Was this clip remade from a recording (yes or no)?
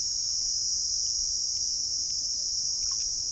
no